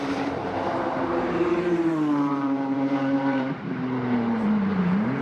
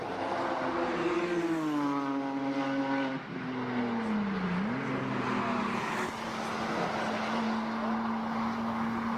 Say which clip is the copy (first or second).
first